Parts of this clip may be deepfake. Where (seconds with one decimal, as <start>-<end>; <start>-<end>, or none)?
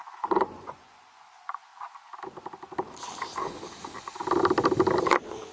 0.0-1.7; 5.0-5.5